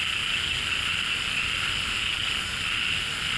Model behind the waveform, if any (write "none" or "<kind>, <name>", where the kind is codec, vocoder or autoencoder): none